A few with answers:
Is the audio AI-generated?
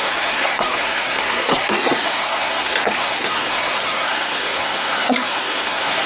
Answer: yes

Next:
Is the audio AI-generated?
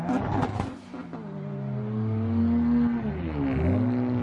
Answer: no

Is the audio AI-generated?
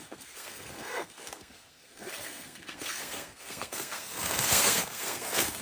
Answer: yes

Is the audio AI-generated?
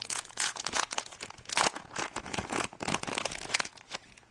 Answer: yes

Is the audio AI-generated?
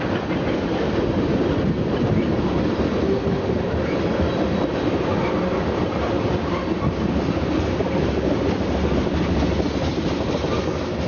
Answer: no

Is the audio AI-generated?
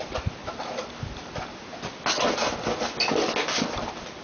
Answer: no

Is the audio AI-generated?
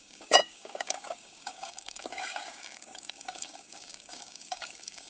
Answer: yes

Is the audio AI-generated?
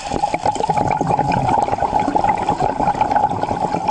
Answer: yes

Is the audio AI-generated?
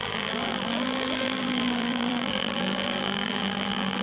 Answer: yes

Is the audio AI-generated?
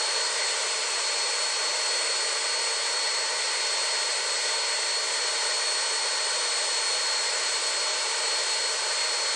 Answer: no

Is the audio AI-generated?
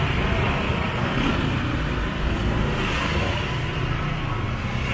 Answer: no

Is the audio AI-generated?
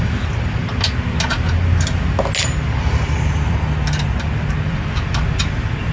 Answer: no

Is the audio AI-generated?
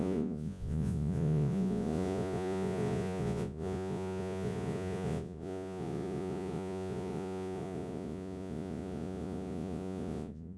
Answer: yes